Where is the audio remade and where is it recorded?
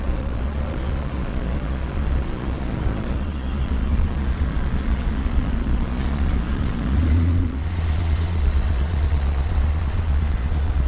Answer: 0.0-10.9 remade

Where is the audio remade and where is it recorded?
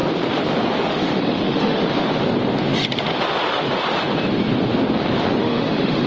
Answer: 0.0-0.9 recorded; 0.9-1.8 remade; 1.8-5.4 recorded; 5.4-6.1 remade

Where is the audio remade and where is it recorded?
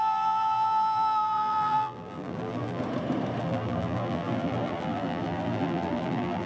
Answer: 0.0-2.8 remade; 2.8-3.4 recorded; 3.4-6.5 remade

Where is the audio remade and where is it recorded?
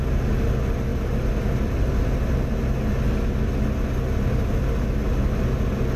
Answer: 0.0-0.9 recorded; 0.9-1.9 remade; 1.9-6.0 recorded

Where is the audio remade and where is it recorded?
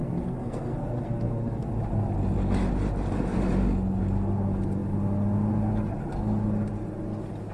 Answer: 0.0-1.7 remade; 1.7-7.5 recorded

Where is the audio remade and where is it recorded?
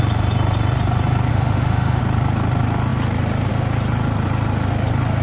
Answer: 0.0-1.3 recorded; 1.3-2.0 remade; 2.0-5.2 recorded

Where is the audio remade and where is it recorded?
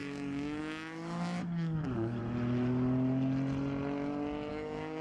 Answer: 0.0-2.2 remade; 2.2-4.5 recorded; 4.5-5.0 remade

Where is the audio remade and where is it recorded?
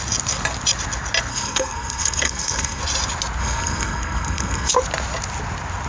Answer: 0.0-1.3 recorded; 1.3-2.8 remade; 2.8-3.4 recorded; 3.4-4.7 remade; 4.7-5.9 recorded